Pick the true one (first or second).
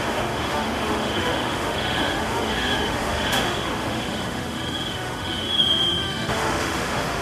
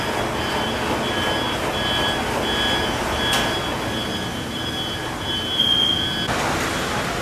second